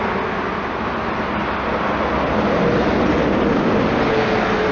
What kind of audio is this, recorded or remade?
recorded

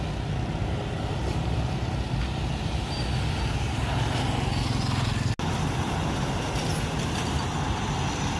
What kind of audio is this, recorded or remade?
recorded